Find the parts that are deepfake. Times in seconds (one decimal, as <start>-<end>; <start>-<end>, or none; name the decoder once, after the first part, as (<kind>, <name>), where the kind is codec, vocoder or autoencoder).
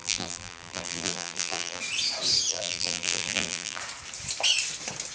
0.0-1.8 (vocoder, BigVGAN v2); 2.5-3.8